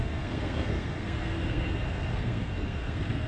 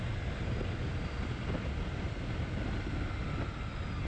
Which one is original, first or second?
second